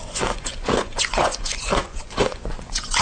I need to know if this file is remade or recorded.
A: remade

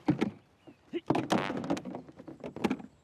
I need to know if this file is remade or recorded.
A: recorded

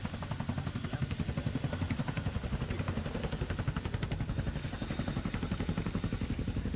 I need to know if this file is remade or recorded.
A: recorded